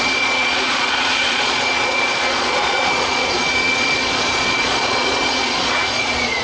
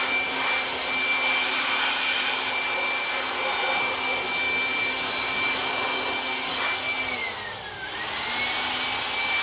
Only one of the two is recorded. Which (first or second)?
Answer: second